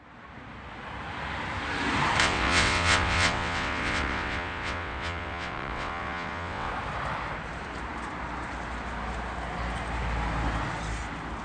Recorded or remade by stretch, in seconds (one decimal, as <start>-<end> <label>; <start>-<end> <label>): 0.0-2.2 recorded; 2.2-6.7 remade; 6.7-11.4 recorded